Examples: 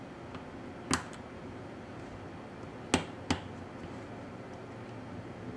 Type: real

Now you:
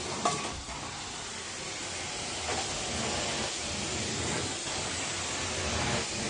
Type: real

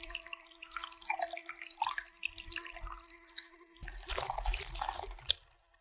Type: real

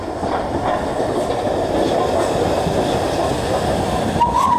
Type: real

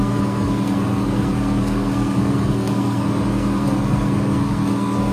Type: fake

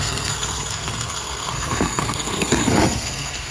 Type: fake